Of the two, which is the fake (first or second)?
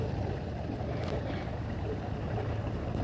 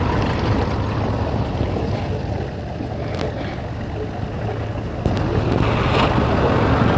first